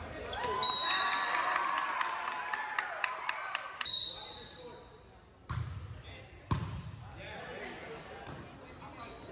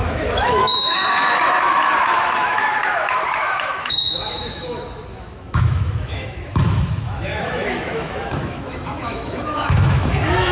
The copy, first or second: second